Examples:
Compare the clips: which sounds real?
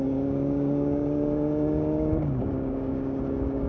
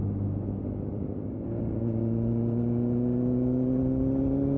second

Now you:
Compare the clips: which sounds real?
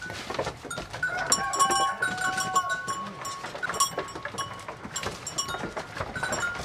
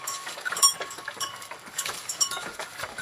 first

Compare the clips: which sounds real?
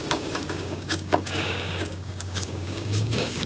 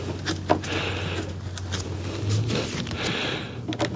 second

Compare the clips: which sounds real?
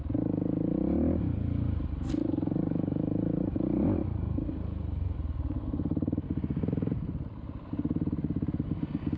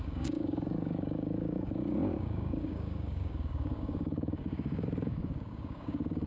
first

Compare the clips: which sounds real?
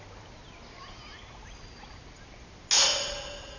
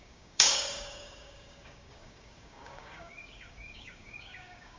first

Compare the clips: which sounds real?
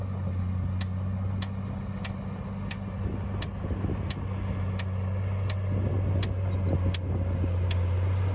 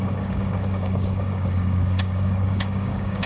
first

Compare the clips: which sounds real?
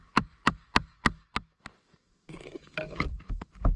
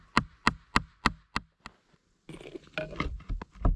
second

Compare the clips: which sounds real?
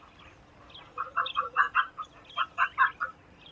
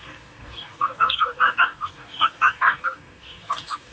first